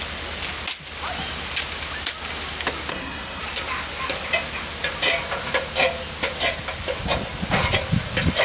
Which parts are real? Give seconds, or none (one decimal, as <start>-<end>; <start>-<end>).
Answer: 0.0-2.9; 3.4-8.4